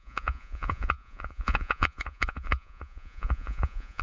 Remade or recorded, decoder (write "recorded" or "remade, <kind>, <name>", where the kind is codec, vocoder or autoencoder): remade, vocoder, Vocos